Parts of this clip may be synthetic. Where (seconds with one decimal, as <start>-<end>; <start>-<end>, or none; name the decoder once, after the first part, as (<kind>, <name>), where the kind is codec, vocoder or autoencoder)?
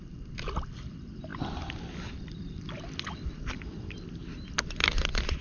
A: 0.0-4.2 (vocoder, BigVGAN v2)